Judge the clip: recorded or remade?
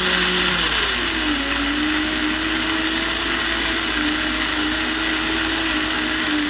recorded